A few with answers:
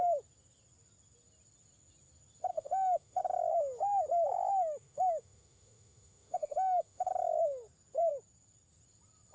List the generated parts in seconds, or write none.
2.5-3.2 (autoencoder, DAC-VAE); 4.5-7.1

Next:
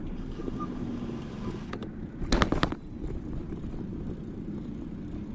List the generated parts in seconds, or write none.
none

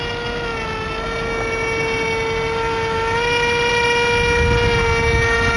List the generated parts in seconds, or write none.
none